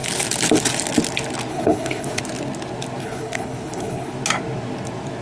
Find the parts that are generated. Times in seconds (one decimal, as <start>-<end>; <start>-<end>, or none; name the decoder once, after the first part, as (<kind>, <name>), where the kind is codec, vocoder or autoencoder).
1.5-2.2 (codec, HILCodec); 3.0-4.1